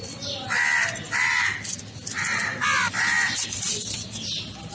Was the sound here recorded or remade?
recorded